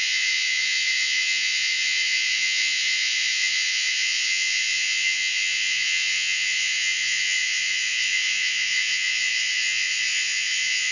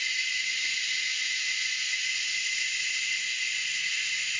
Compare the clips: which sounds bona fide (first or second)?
second